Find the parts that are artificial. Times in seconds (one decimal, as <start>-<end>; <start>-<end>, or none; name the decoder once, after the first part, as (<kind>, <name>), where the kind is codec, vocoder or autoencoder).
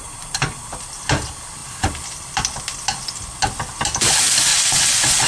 4.5-5.3 (vocoder, WaveNeXt)